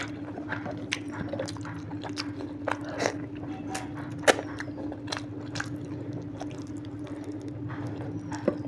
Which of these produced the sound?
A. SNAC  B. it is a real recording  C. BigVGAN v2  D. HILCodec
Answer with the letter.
B